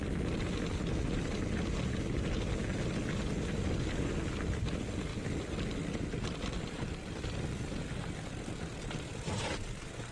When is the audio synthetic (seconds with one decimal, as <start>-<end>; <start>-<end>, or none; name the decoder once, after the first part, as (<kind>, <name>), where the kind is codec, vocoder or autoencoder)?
5.1-8.7 (vocoder, BigVGAN v2)